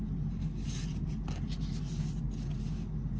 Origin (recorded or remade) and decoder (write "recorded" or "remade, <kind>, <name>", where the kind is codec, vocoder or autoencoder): recorded